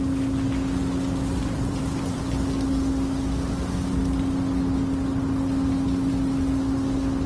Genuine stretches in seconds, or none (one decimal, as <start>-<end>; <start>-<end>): 0.0-1.4; 2.2-7.3